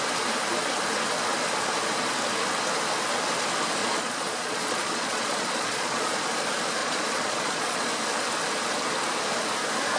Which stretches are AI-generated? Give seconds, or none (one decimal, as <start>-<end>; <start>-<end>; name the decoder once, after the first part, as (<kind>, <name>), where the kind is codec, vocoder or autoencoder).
3.8-6.1 (vocoder, Vocos); 6.8-7.9